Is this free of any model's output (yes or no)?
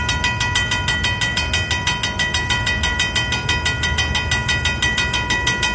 yes